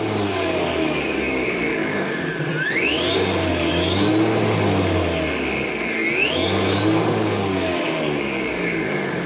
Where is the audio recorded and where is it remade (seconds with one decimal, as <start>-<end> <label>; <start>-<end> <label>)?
0.0-2.5 remade; 2.5-3.5 recorded; 3.5-4.1 remade; 4.1-6.3 recorded; 6.3-9.3 remade